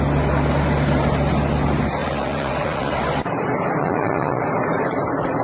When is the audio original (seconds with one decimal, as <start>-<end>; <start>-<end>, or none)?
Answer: 0.0-2.0; 3.0-3.8; 4.4-5.4